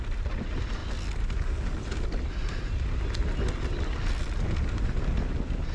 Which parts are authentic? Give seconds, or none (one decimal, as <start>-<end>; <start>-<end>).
0.0-5.7